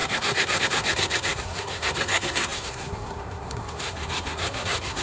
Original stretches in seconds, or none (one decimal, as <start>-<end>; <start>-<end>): none